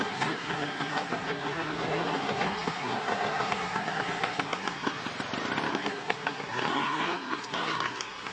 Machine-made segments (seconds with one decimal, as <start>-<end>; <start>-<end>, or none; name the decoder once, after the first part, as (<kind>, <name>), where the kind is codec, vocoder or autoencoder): 0.0-5.0 (codec, SNAC); 5.7-8.3